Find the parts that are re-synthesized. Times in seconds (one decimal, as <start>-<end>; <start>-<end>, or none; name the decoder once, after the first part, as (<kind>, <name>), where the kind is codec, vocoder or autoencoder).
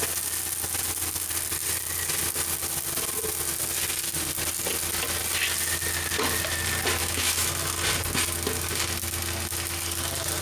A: 7.0-7.5 (autoencoder, DAC-VAE)